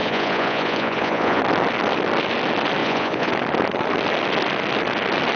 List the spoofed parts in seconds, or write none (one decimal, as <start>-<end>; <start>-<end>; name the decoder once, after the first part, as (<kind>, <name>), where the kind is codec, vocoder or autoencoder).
0.0-1.4 (vocoder, Vocos); 2.8-3.3